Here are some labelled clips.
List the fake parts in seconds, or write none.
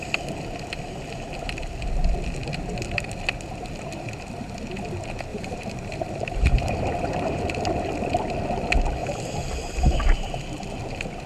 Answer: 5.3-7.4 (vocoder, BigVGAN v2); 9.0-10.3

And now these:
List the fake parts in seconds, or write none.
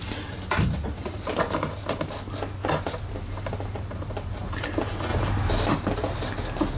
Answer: 0.0-2.6 (vocoder, BigVGAN v2); 3.1-6.8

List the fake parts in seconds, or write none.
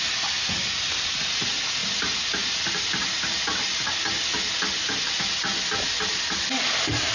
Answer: none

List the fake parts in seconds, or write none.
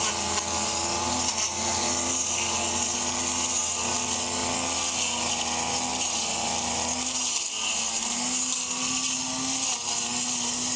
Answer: none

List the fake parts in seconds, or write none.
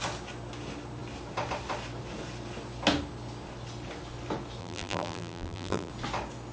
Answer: 4.6-5.9 (vocoder, BigVGAN v2)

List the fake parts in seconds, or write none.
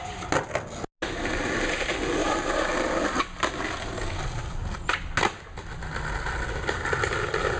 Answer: 2.2-2.9 (vocoder, BigVGAN v2)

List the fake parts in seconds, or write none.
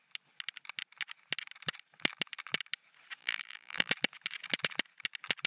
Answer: 3.2-3.9 (vocoder, BigVGAN v2)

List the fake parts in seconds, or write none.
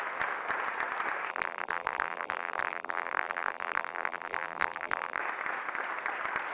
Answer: 1.3-5.2 (vocoder, BigVGAN v2)